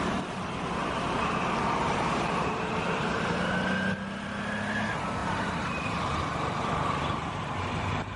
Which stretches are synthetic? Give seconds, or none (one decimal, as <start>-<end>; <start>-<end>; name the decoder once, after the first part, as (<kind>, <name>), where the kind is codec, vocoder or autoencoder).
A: 0.8-3.2 (vocoder, BigVGAN v2); 5.2-8.2